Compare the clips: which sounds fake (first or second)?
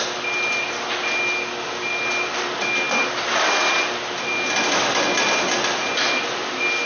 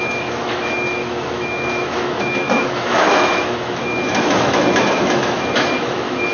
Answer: second